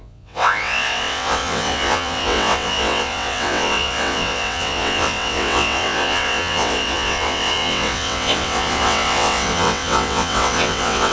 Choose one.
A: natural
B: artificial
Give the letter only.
B